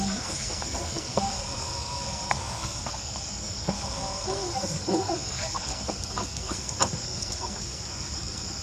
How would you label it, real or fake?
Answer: fake